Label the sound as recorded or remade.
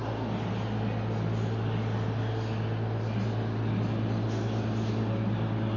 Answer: recorded